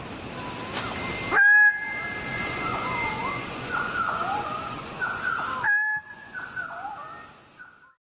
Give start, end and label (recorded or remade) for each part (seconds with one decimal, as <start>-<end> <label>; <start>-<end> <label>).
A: 0.0-2.3 recorded; 2.3-5.2 remade; 5.2-6.1 recorded; 6.1-6.9 remade; 6.9-8.0 recorded